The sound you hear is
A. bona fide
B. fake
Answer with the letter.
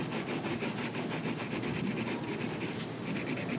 A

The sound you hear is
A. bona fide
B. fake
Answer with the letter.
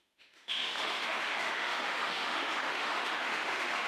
B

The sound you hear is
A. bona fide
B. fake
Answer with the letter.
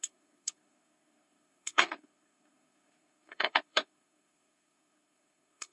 B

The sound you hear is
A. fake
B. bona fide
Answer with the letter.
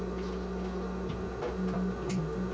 B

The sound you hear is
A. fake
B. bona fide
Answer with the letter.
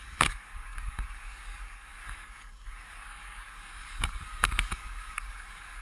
A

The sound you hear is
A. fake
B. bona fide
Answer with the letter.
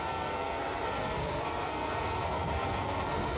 A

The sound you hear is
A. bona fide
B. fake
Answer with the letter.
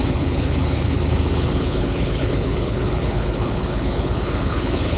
B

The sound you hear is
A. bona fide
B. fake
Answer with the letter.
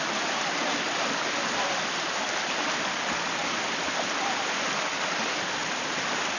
A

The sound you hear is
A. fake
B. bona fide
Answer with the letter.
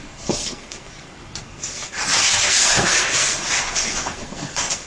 A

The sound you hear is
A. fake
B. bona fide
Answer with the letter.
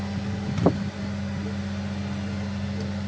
B